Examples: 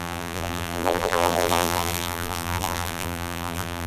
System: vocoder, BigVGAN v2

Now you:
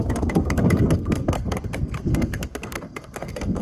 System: codec, SNAC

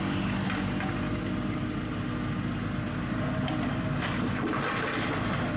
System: none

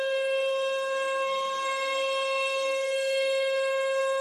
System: codec, SNAC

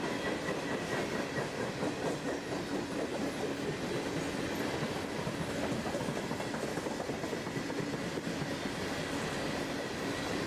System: none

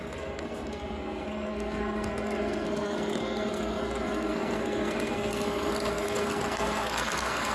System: codec, SNAC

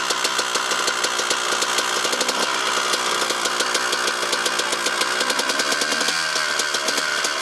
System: none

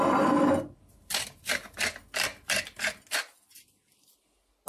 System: none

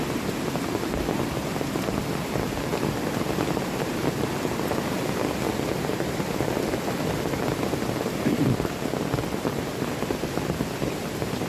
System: vocoder, BigVGAN v2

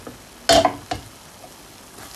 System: none